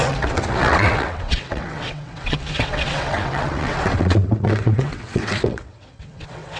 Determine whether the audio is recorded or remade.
remade